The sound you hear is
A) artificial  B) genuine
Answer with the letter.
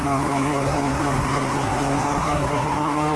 A